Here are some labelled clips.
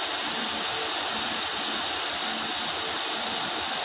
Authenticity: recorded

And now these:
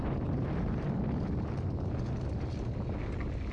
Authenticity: recorded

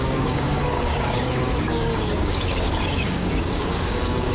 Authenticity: remade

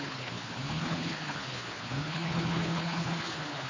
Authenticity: remade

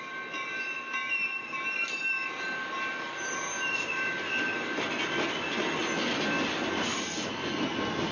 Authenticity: recorded